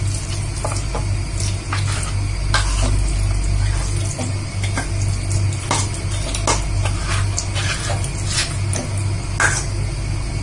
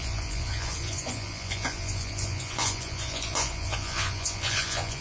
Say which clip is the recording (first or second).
first